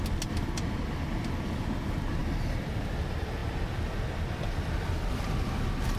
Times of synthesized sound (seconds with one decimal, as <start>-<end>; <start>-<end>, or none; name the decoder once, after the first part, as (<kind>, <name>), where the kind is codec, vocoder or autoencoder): none